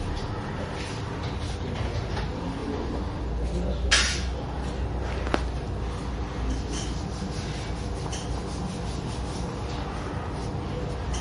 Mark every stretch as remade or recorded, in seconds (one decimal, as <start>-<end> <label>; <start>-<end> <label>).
0.0-11.2 recorded